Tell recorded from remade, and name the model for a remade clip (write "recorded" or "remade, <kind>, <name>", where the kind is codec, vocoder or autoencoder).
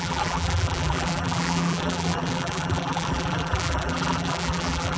remade, vocoder, BigVGAN v2